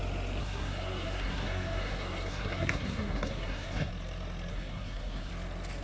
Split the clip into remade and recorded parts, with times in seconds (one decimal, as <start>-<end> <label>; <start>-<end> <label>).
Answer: 0.0-0.4 recorded; 0.4-3.9 remade; 3.9-4.5 recorded; 4.5-5.3 remade; 5.3-5.8 recorded